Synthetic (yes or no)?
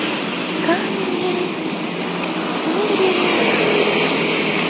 no